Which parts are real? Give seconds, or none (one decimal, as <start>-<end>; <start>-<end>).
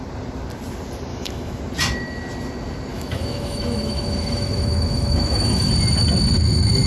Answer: 0.0-1.1; 1.6-2.9; 5.7-6.9